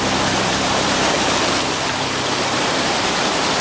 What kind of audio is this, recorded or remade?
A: remade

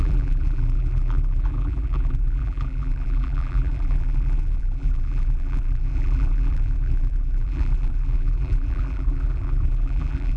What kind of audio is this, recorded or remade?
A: remade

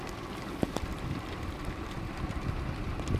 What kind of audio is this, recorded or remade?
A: remade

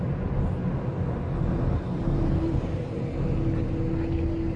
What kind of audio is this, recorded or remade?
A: recorded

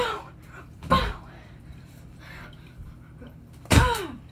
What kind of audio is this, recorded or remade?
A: remade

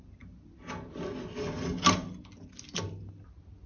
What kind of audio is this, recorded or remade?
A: recorded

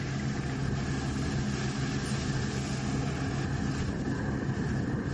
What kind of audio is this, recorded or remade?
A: recorded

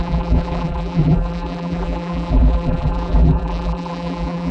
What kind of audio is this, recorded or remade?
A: remade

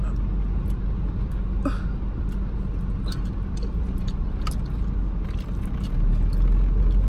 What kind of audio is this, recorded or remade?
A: recorded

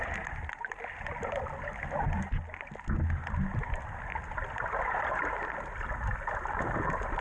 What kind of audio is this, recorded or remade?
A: recorded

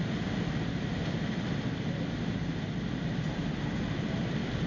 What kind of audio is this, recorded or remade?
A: recorded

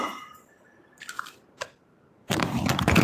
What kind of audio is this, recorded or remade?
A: remade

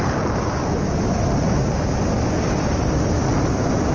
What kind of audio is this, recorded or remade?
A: recorded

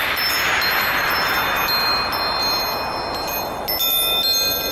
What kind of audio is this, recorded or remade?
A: recorded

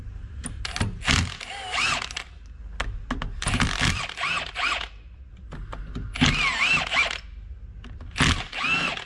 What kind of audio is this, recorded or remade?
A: recorded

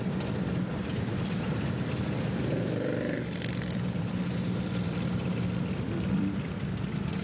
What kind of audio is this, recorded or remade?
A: remade